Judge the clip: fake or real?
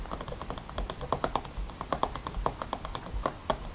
real